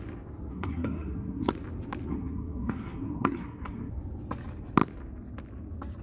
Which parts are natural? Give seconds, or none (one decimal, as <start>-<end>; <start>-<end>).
0.0-0.5; 1.5-2.1; 3.9-6.0